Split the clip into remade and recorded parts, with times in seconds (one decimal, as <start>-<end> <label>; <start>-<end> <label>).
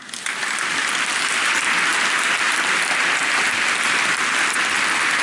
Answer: 0.0-5.2 recorded